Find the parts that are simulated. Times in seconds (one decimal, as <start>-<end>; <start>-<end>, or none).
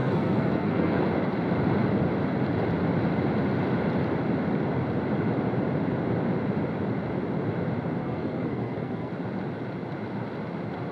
0.0-1.0; 8.0-9.1